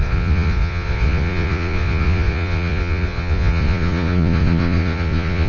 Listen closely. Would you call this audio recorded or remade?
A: remade